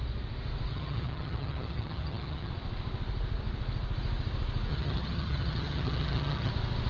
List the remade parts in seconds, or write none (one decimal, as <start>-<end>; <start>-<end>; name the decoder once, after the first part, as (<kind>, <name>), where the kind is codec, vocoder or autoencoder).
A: 0.7-2.5 (vocoder, HiFi-GAN); 4.7-6.5